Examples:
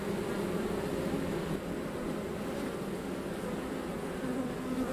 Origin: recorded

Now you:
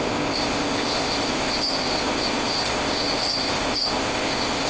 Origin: remade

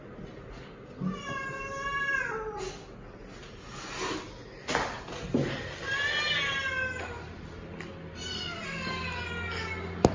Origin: recorded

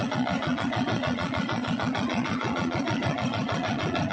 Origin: remade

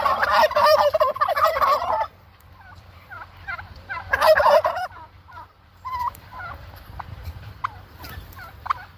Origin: remade